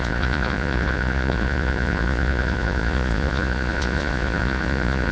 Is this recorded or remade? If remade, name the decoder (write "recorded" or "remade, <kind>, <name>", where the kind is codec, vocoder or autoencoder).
remade, vocoder, Vocos